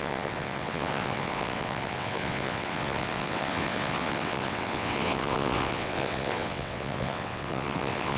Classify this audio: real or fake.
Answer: fake